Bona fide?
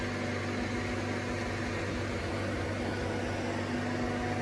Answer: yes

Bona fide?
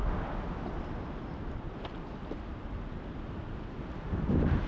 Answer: yes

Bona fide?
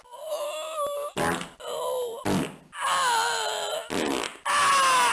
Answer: yes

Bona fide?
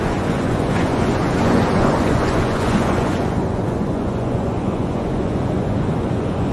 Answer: no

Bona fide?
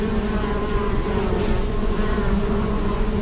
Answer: no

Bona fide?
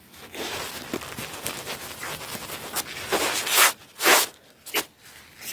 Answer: yes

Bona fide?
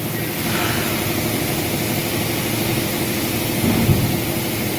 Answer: yes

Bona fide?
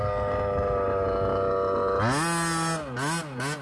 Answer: yes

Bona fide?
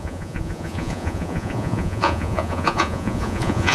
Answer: no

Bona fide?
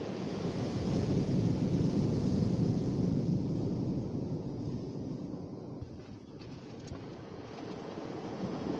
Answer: no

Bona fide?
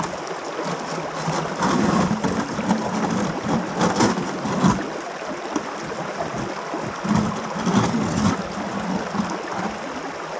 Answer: yes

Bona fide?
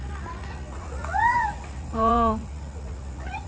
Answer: no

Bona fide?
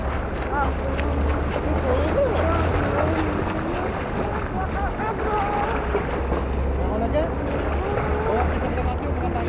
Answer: yes